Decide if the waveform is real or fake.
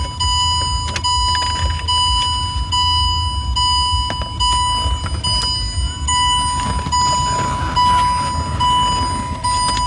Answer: real